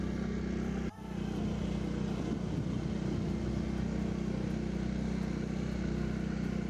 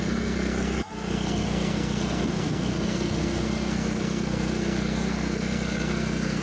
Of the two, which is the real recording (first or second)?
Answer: first